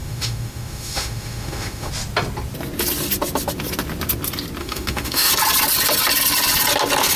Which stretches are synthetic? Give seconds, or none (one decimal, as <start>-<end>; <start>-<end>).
0.0-1.9; 4.6-5.3